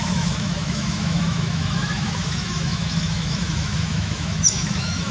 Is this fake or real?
fake